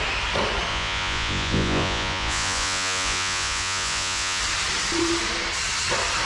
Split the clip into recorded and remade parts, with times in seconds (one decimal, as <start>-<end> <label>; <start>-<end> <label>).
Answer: 0.0-0.7 recorded; 0.7-4.4 remade; 4.4-6.2 recorded